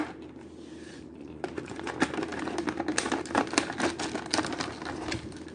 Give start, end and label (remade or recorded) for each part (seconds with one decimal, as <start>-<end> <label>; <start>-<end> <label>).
0.0-0.9 recorded; 0.9-1.9 remade; 1.9-5.5 recorded

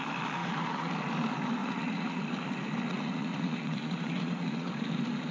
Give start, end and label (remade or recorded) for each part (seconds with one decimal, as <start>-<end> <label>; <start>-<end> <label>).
0.0-0.4 recorded; 0.4-0.9 remade; 0.9-1.6 recorded; 1.6-2.2 remade; 2.2-2.9 recorded; 2.9-4.7 remade; 4.7-5.3 recorded

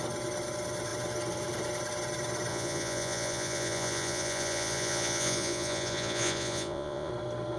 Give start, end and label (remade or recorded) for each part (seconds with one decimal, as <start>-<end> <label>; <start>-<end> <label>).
0.0-2.5 recorded; 2.5-7.1 remade; 7.1-7.6 recorded

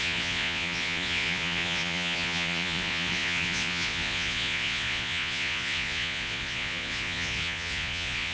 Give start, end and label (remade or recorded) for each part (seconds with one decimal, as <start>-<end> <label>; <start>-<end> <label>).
0.0-8.3 remade